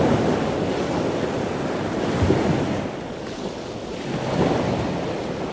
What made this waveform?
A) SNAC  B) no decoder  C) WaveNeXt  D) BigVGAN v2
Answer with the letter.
B